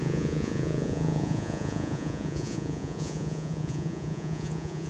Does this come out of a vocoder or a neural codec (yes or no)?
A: yes